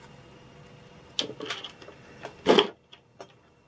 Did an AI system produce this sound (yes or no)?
no